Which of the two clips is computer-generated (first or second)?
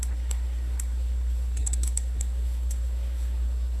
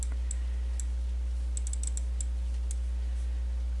first